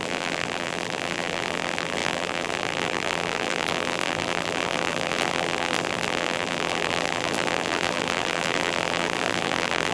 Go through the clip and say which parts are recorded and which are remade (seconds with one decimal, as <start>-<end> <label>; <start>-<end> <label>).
0.0-9.9 remade